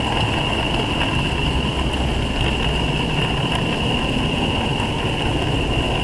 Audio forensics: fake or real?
real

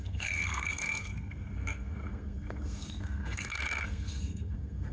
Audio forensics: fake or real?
fake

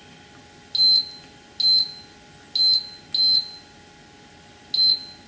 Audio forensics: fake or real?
real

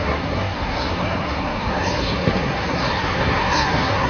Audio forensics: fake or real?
fake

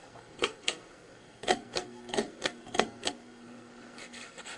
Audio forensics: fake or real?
fake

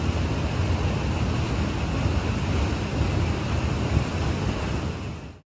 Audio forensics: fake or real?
real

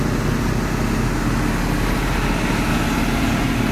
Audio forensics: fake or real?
real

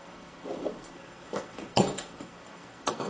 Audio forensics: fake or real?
fake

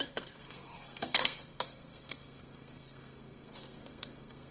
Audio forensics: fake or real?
fake